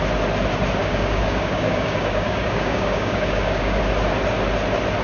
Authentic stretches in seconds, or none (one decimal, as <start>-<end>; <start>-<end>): 0.0-0.8; 3.8-5.0